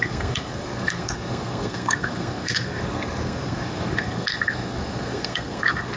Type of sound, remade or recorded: remade